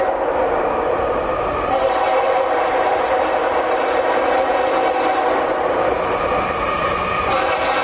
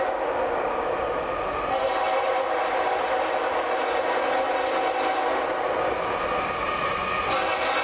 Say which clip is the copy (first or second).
first